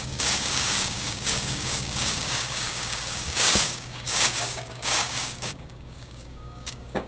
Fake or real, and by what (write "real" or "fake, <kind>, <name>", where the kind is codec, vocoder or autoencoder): fake, codec, DAC